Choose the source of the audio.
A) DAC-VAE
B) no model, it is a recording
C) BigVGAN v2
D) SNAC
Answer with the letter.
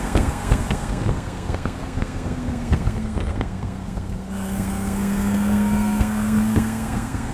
D